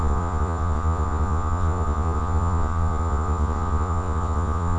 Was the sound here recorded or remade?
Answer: remade